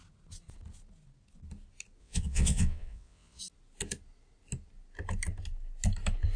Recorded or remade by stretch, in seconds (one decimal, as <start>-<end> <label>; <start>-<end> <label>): 0.0-2.0 recorded; 2.0-3.4 remade; 3.4-6.4 recorded